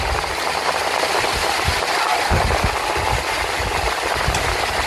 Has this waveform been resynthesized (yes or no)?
no